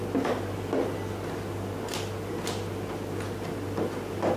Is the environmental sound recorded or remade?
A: recorded